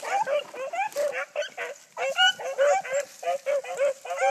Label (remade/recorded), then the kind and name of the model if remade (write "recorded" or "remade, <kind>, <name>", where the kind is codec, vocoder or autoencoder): recorded